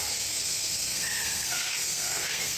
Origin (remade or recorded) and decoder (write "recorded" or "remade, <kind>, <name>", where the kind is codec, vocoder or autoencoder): remade, codec, SNAC